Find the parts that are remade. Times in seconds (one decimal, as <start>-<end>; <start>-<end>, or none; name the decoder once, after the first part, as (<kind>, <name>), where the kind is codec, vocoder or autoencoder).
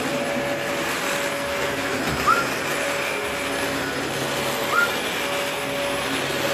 1.3-2.0 (codec, SNAC)